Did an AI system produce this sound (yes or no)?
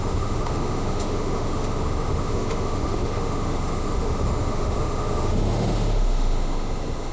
yes